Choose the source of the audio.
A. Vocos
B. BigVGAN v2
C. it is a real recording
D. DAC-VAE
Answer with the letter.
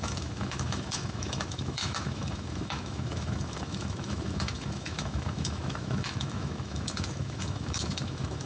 D